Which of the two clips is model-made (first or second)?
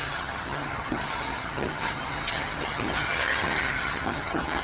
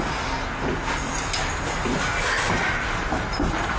first